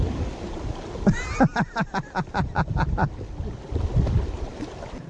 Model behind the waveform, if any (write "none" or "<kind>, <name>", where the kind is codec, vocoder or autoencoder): none